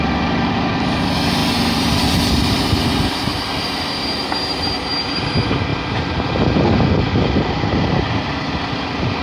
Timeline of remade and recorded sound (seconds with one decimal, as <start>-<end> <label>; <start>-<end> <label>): 0.0-3.3 recorded; 3.3-5.2 remade; 5.2-9.2 recorded

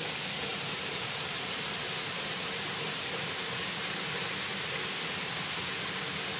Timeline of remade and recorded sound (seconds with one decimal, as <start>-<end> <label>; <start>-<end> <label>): 0.0-0.5 recorded; 0.5-2.8 remade; 2.8-6.4 recorded

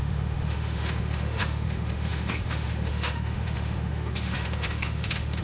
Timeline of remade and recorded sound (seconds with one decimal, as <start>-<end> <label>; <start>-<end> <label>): 0.0-5.4 remade

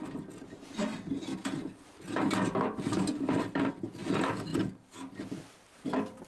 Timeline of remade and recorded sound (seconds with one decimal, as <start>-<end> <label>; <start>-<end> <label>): 0.0-6.3 recorded

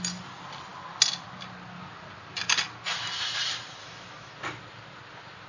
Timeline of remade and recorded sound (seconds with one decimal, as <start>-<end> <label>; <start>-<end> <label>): 0.0-3.8 recorded; 3.8-4.3 remade; 4.3-5.5 recorded

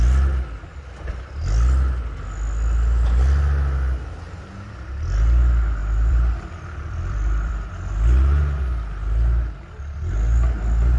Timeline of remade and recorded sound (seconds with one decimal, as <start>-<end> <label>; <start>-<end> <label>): 0.0-5.8 recorded; 5.8-7.7 remade; 7.7-11.0 recorded

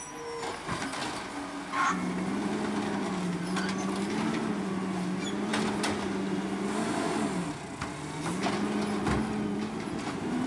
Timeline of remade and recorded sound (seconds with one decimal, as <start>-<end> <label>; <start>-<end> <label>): 0.0-10.5 recorded